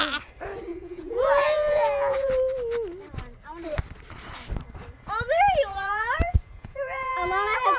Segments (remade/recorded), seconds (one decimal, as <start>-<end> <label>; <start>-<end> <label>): 0.0-0.7 recorded; 0.7-2.3 remade; 2.3-5.7 recorded; 5.7-7.1 remade; 7.1-7.8 recorded